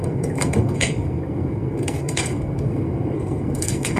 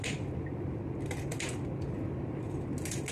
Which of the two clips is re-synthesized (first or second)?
first